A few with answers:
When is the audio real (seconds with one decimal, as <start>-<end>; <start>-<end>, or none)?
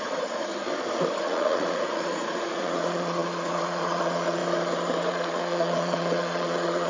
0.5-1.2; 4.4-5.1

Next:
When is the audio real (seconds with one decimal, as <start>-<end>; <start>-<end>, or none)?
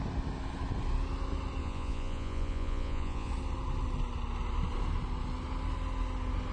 0.0-1.6; 3.3-6.5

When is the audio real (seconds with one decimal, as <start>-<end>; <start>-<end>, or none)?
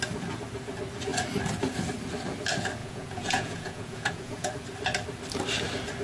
0.0-2.8; 4.5-6.0